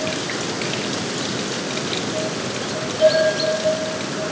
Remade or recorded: recorded